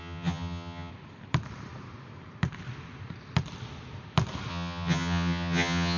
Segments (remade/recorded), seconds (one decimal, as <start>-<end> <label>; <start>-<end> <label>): 0.0-0.9 remade; 0.9-4.5 recorded; 4.5-6.0 remade